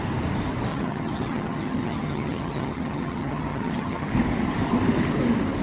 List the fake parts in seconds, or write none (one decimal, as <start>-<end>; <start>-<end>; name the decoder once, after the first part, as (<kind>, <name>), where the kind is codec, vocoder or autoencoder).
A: 0.7-4.1 (vocoder, HiFi-GAN)